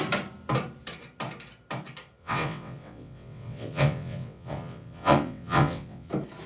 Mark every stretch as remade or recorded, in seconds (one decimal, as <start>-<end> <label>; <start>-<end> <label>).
0.0-2.2 recorded; 2.2-6.1 remade; 6.1-6.5 recorded